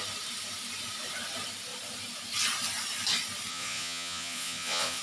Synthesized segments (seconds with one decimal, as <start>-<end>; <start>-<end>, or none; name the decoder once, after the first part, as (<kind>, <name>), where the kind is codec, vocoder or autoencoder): 3.5-5.0 (vocoder, Vocos)